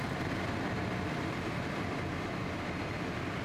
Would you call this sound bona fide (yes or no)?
no